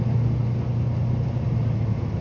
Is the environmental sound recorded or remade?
recorded